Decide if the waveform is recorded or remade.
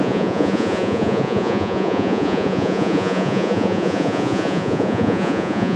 remade